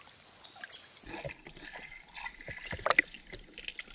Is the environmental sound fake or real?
real